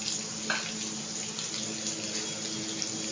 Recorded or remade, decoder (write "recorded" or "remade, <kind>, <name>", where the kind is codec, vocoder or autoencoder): recorded